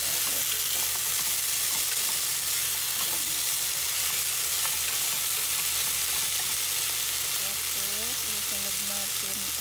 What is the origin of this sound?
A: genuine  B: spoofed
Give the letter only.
A